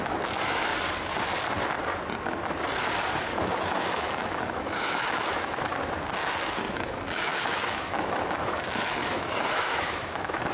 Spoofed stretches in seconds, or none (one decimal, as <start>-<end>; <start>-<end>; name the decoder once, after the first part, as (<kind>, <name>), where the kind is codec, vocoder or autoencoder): 0.0-0.7 (autoencoder, DAC-VAE); 3.4-5.7; 6.7-10.5